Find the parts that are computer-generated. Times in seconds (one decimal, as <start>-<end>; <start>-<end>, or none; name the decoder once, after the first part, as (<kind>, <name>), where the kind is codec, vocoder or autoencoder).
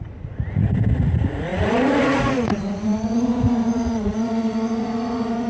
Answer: 0.0-5.5 (vocoder, Vocos)